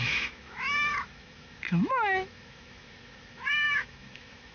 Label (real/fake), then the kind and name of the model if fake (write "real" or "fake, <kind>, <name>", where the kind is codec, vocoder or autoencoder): fake, autoencoder, DAC-VAE